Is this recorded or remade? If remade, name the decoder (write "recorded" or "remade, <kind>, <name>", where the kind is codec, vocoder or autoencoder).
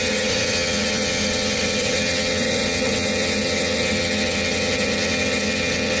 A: remade, vocoder, HiFi-GAN